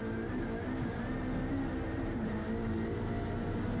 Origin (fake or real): real